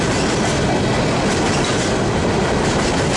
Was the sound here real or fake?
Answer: real